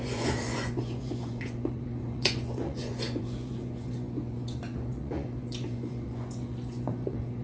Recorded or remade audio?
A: remade